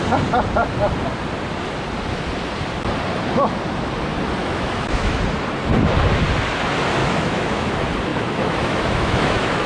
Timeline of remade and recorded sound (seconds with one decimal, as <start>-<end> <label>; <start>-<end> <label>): 0.0-4.4 recorded; 4.4-5.2 remade; 5.2-7.0 recorded; 7.0-7.7 remade; 7.7-8.1 recorded; 8.1-9.7 remade